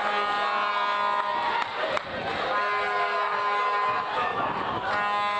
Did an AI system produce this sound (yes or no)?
no